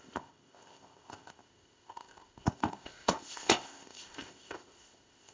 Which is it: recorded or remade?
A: remade